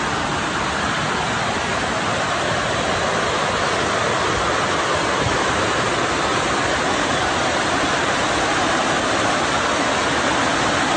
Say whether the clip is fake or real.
real